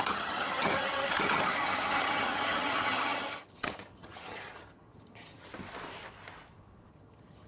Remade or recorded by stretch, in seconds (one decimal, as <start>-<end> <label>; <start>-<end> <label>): 0.0-5.5 remade; 5.5-6.9 recorded; 6.9-7.5 remade